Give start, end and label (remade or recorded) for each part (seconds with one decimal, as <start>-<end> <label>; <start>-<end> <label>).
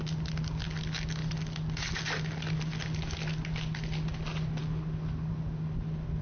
0.0-6.2 recorded